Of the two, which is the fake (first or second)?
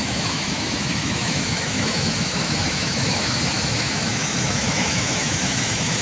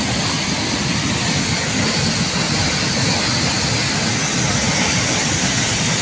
first